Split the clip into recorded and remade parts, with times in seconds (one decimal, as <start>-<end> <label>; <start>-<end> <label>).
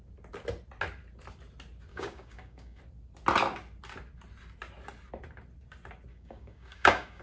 0.0-1.9 recorded; 1.9-2.8 remade; 2.8-6.1 recorded; 6.1-7.2 remade